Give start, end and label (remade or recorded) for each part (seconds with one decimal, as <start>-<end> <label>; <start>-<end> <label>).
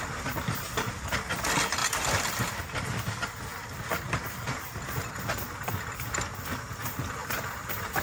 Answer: 0.0-1.8 recorded; 1.8-2.4 remade; 2.4-3.5 recorded; 3.5-5.1 remade; 5.1-7.2 recorded; 7.2-8.0 remade